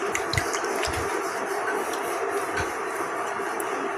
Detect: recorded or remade recorded